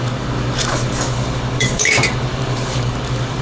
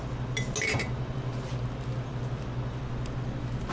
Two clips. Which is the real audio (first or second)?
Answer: second